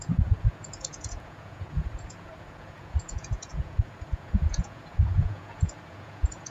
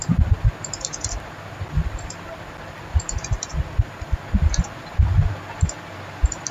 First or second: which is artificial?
first